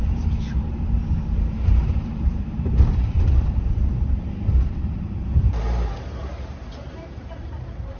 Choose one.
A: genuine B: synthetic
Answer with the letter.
B